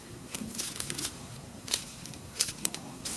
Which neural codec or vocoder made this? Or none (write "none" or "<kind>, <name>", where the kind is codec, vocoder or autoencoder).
codec, SNAC